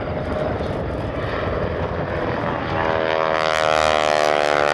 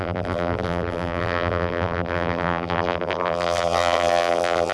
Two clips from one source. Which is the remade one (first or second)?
second